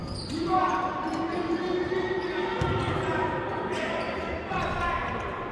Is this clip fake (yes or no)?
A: no